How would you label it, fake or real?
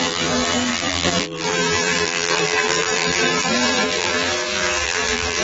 fake